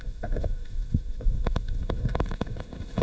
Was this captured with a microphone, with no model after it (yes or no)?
no